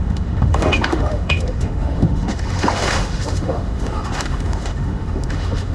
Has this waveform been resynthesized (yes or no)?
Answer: yes